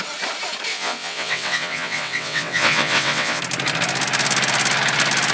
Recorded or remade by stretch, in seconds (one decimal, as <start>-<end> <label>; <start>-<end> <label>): 0.0-0.7 recorded; 0.7-3.4 remade; 3.4-5.3 recorded

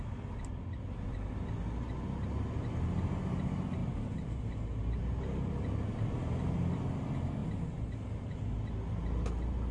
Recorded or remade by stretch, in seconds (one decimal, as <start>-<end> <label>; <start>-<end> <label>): 0.0-3.8 recorded; 3.8-5.0 remade; 5.0-9.7 recorded

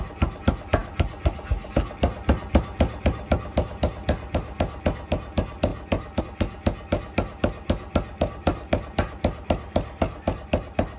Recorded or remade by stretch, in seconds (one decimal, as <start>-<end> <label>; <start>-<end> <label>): 0.0-11.0 recorded